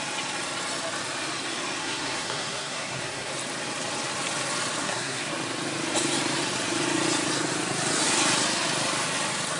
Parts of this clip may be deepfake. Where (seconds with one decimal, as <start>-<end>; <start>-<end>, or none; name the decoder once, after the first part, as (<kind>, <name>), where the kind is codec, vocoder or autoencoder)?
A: 1.8-3.3 (codec, SNAC); 4.8-5.3